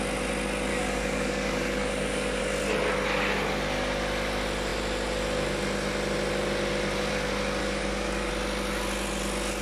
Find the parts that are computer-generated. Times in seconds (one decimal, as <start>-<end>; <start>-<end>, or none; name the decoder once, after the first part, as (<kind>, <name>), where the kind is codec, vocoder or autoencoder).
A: 0.7-2.4 (codec, DAC); 7.6-8.3